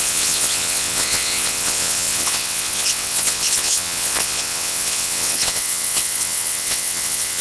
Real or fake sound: fake